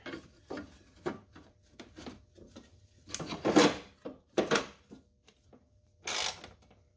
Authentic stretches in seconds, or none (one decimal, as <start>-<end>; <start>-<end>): 0.0-7.0